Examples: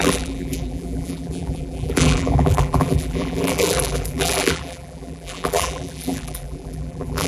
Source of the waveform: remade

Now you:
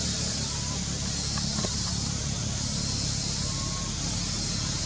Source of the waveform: recorded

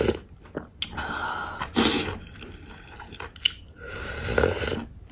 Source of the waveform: recorded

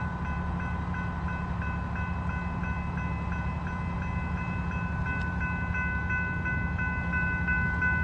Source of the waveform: recorded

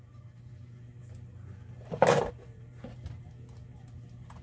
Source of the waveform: recorded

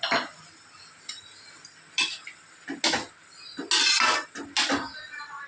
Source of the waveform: recorded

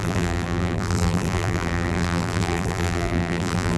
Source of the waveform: remade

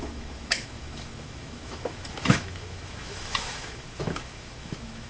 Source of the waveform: remade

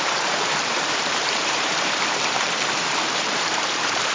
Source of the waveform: remade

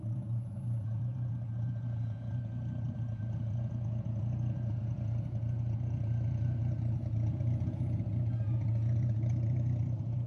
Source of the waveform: remade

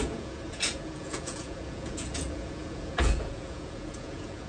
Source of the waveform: remade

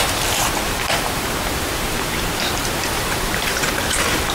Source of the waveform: remade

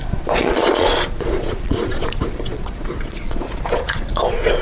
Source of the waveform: remade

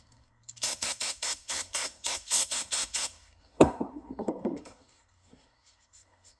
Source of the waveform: remade